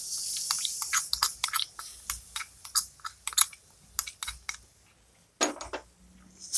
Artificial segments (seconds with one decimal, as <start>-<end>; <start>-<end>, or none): none